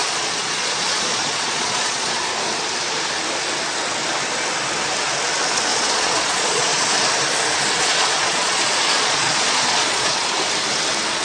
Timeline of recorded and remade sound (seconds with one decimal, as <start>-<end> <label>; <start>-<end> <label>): 0.0-2.2 remade; 2.2-5.7 recorded; 5.7-6.9 remade; 6.9-7.8 recorded; 7.8-10.3 remade; 10.3-11.2 recorded